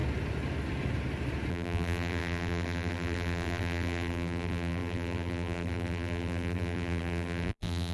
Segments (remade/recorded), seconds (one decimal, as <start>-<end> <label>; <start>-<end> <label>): 0.0-1.5 recorded; 1.5-7.9 remade